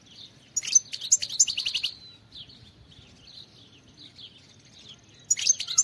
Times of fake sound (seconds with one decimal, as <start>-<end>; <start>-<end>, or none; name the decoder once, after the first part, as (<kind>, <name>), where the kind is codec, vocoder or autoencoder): none